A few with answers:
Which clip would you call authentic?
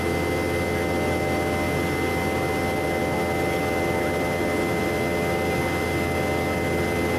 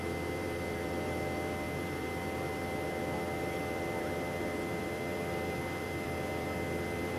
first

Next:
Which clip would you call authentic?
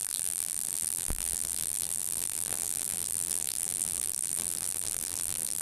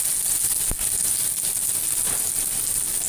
second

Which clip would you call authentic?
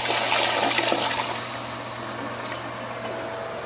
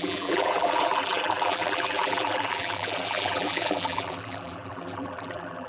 first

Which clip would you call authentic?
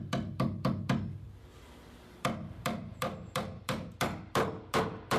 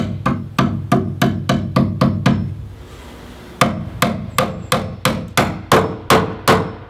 second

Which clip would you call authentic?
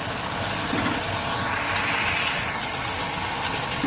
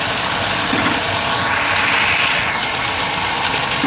first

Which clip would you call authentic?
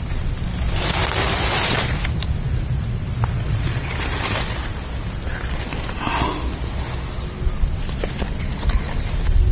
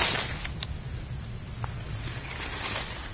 second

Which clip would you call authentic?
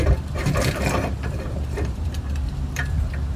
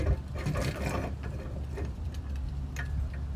second